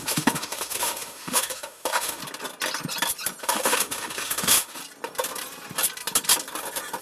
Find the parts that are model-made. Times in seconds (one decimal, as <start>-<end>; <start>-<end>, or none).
0.0-2.2; 3.4-4.8